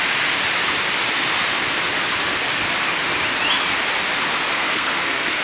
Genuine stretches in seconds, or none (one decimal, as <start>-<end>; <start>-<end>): 0.0-4.5